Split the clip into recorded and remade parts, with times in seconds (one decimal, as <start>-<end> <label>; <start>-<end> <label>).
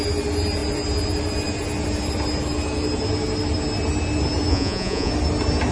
0.0-4.5 recorded; 4.5-5.1 remade; 5.1-5.7 recorded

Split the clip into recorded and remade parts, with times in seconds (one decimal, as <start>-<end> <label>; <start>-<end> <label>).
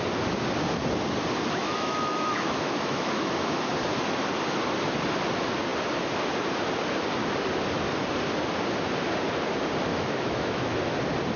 0.0-1.6 recorded; 1.6-3.7 remade; 3.7-9.9 recorded; 9.9-10.7 remade; 10.7-11.4 recorded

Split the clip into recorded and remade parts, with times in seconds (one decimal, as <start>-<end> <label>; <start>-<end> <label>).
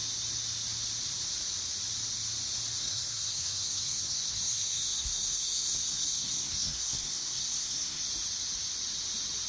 0.0-2.8 recorded; 2.8-8.0 remade; 8.0-9.5 recorded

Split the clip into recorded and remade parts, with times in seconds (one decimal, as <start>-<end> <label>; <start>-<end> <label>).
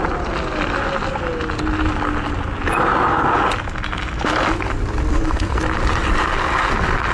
0.0-5.1 recorded; 5.1-5.6 remade; 5.6-7.1 recorded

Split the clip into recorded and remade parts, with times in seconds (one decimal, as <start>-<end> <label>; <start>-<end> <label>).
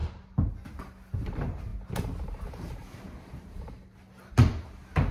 0.0-5.1 recorded